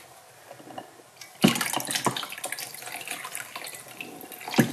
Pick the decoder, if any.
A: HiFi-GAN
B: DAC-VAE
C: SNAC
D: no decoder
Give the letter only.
D